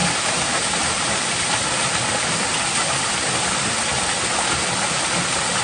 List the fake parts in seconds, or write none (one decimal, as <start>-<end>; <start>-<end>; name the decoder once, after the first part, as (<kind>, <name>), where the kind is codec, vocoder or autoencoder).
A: 0.0-3.4 (vocoder, BigVGAN v2)